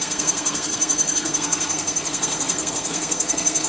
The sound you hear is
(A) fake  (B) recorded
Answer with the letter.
A